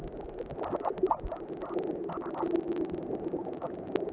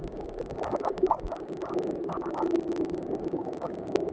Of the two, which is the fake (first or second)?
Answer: second